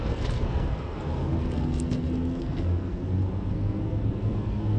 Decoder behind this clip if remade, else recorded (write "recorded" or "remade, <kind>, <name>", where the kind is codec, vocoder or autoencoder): remade, codec, SNAC